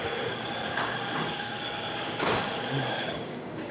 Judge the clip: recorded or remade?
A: remade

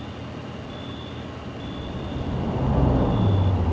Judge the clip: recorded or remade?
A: recorded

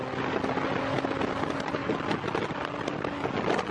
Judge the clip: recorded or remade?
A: recorded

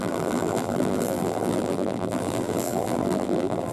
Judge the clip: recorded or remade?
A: remade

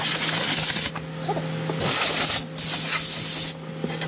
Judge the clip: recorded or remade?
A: recorded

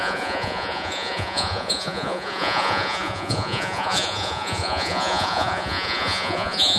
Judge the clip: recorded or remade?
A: remade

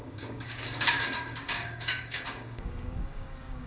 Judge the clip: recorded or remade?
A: remade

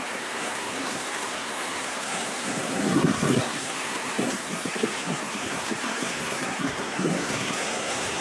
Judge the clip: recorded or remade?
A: remade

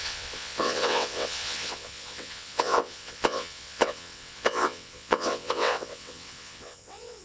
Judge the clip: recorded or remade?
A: remade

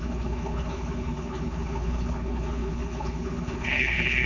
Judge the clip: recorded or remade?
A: remade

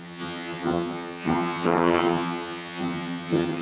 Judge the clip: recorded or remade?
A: remade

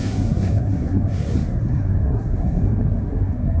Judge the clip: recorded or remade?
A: remade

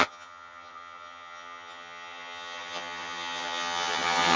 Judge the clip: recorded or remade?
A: remade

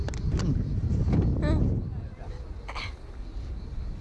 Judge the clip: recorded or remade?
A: recorded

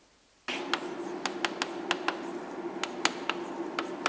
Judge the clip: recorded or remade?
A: recorded